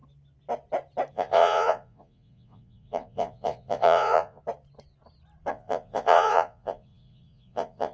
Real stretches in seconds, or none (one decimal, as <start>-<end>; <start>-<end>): 0.0-1.1; 4.4-5.5